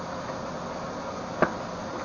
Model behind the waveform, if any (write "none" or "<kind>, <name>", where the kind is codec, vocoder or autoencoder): none